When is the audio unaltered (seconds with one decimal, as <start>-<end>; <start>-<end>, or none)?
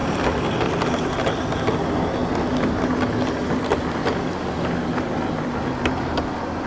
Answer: 0.0-6.7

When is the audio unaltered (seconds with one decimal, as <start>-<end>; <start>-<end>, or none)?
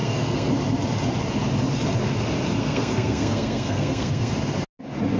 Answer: 0.5-2.6; 4.3-5.2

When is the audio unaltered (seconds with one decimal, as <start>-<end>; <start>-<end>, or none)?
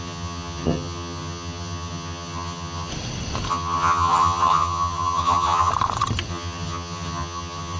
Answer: 2.9-3.5; 5.7-6.3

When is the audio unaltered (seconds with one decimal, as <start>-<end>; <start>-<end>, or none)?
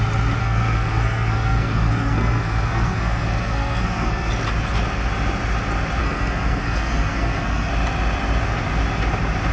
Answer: 0.0-0.4; 4.3-6.0; 7.7-9.5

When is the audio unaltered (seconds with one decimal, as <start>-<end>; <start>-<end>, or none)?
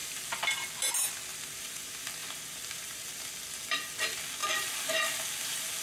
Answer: 0.0-1.3; 1.8-2.2; 3.1-5.8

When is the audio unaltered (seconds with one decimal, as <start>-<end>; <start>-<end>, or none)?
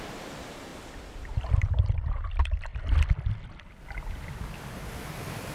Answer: 0.7-1.3; 2.7-5.5